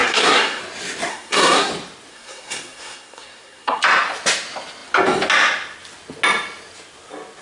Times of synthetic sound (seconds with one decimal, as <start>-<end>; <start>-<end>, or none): 0.0-0.6; 1.1-1.7; 2.1-3.8